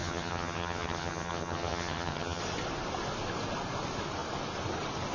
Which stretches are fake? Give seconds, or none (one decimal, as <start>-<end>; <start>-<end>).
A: 0.0-2.4